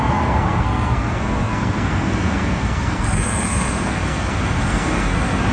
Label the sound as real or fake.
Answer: fake